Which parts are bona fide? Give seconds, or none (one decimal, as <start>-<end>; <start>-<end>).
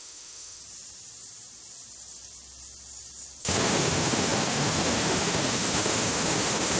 0.6-3.4